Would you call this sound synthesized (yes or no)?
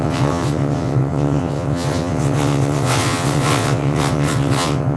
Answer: yes